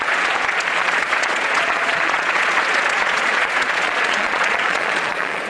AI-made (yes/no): yes